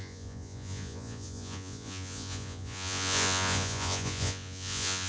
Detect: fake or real fake